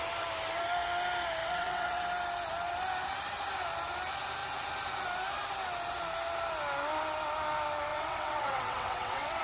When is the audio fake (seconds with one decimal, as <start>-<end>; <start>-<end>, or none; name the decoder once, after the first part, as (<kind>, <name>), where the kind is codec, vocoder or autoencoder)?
1.4-2.0 (vocoder, WaveNeXt); 7.9-9.4